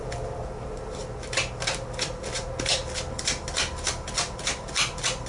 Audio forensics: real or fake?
real